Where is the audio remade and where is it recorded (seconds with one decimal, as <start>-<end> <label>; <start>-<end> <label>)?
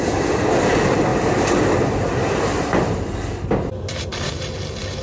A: 0.0-4.1 remade; 4.1-5.0 recorded